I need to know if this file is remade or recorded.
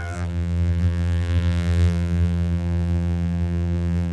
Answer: remade